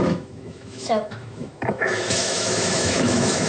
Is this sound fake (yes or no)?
yes